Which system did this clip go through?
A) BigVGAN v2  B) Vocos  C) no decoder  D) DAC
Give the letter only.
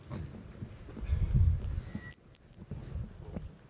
C